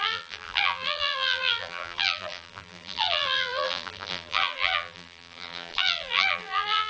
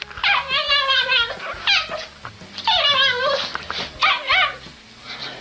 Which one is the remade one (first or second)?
first